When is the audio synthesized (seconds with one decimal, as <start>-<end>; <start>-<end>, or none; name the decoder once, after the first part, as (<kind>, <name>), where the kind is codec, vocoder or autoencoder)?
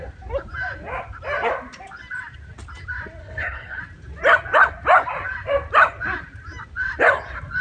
3.2-3.8 (codec, HILCodec)